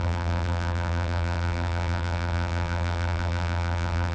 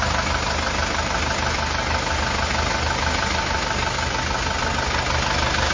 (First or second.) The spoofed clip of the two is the first